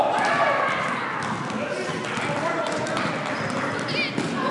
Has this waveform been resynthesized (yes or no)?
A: no